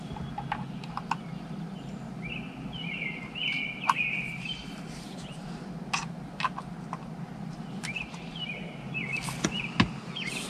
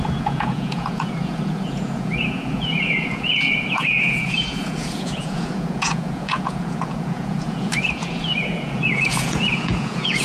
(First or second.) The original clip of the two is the first